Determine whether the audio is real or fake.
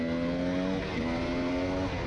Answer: real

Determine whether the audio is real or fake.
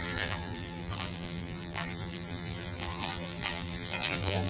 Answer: fake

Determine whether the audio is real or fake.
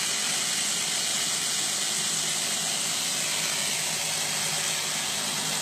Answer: real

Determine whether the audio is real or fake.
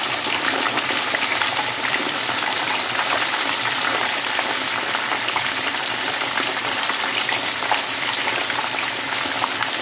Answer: fake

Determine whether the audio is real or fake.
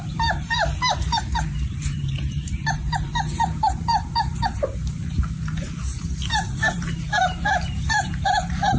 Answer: fake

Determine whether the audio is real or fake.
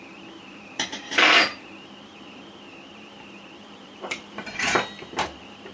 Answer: fake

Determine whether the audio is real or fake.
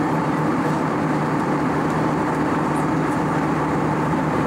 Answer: fake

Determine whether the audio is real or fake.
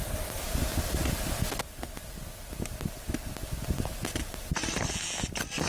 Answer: real